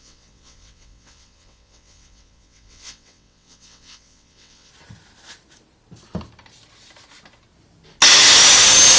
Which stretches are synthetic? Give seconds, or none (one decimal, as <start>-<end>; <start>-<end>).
0.0-4.7